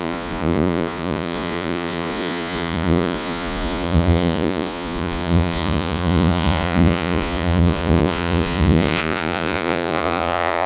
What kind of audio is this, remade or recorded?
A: remade